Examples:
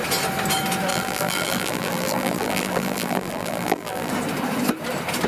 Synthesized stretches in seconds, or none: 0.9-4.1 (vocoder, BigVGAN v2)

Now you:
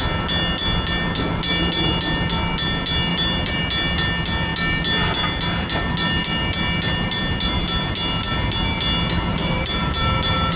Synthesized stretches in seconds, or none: 3.1-3.6 (vocoder, BigVGAN v2); 9.3-10.6

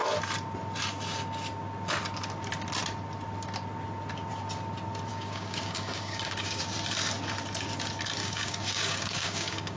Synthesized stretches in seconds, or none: 5.1-6.6 (codec, DAC); 8.2-9.8

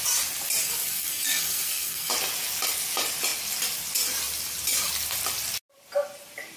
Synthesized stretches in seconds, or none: 0.6-2.1 (codec, SNAC)

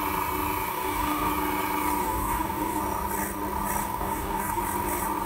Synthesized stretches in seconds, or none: 0.7-1.3 (codec, DAC); 2.0-2.8; 3.8-4.6

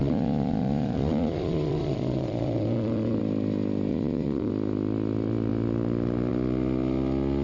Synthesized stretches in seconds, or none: 0.0-3.2 (vocoder, Vocos); 3.9-4.5

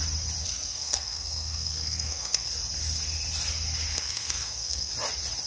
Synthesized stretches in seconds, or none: 0.4-2.5 (codec, SNAC); 3.9-4.9

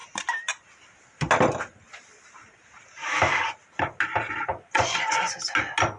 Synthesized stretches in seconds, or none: 4.5-5.3 (vocoder, Vocos)